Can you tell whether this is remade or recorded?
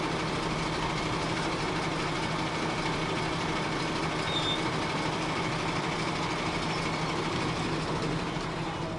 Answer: recorded